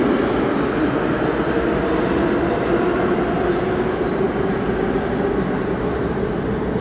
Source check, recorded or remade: recorded